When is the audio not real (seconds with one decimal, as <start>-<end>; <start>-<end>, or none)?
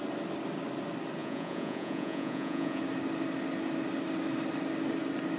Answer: 1.2-2.8